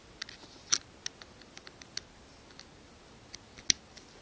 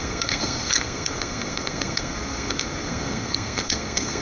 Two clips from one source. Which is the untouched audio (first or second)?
first